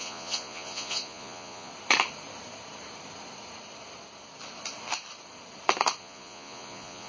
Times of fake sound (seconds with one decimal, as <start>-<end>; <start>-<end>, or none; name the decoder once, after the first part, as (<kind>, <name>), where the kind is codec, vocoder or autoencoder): 0.0-1.7 (vocoder, Vocos); 6.0-7.1